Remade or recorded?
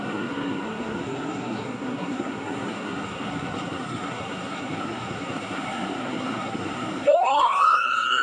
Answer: remade